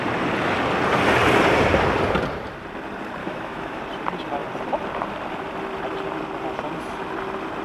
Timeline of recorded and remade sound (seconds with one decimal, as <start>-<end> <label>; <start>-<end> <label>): 0.0-3.2 recorded; 3.2-3.8 remade; 3.8-7.6 recorded